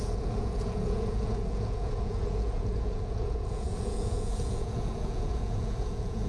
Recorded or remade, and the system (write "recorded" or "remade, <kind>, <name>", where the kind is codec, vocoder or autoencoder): remade, vocoder, Vocos